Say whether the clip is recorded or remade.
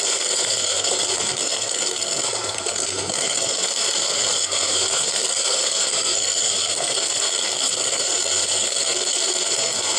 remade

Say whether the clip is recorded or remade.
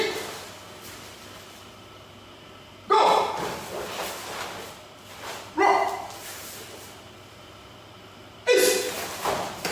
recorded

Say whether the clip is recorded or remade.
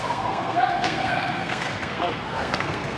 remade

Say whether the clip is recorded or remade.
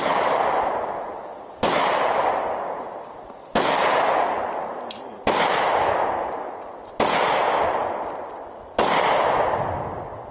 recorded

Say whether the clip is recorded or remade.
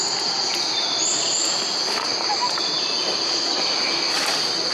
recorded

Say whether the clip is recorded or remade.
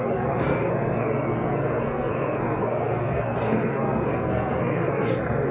remade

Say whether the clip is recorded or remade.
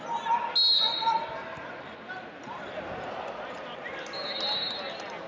recorded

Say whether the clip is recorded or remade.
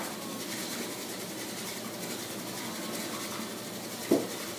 recorded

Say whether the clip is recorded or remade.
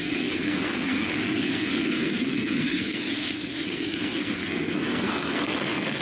remade